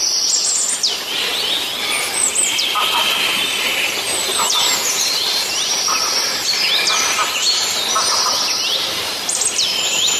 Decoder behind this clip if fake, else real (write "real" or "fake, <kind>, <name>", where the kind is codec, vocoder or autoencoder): real